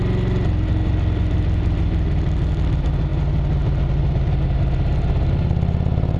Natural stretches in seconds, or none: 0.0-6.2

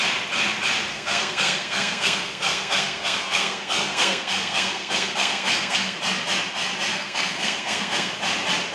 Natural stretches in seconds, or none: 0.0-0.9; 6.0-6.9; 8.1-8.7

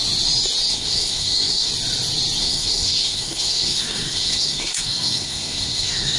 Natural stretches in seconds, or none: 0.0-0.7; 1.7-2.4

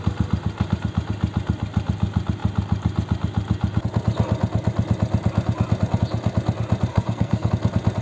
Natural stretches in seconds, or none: 0.0-6.9; 7.5-8.0

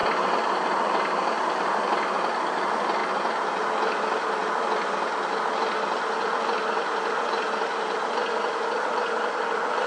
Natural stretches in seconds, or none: 0.0-9.9

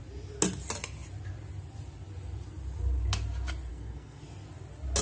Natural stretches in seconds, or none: 0.0-3.7; 4.2-5.0

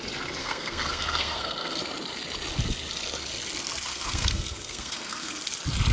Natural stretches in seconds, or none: 0.0-0.4; 1.8-3.9; 5.4-5.9